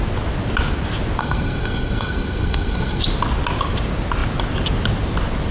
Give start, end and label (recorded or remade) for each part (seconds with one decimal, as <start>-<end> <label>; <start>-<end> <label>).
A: 0.0-1.2 recorded; 1.2-3.0 remade; 3.0-5.5 recorded